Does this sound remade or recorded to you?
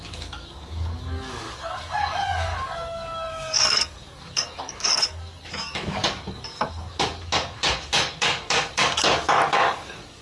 remade